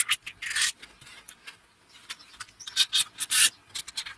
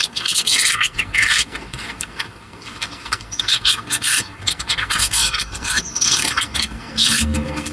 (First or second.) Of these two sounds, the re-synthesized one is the second